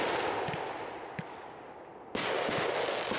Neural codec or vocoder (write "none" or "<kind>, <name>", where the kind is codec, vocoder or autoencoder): none